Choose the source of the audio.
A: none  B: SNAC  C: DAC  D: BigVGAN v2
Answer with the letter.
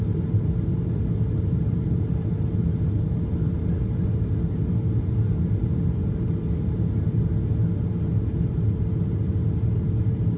A